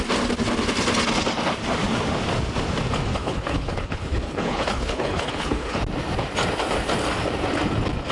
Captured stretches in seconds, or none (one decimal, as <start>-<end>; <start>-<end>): 0.0-3.2; 5.8-8.1